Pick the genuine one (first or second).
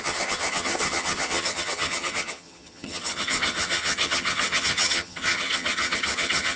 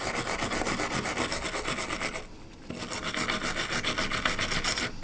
second